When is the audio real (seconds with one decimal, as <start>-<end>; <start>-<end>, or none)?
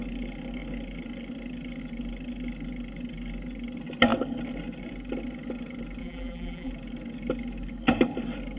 0.0-6.0; 6.7-8.6